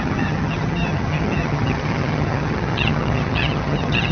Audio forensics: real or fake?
fake